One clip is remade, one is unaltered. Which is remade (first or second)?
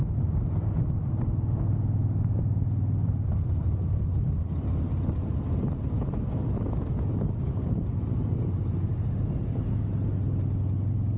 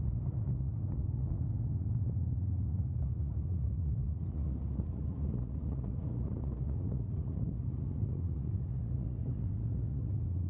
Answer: second